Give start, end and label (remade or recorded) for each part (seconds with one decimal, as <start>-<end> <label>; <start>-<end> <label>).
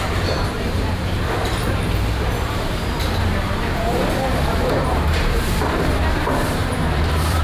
0.0-7.4 remade